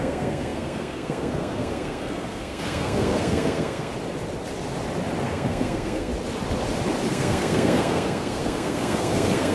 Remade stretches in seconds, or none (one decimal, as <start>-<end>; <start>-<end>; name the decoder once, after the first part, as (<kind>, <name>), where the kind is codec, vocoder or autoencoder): 0.0-3.9 (codec, SNAC); 5.2-6.1; 7.1-9.5